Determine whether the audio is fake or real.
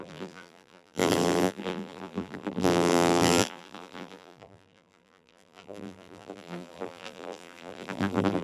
fake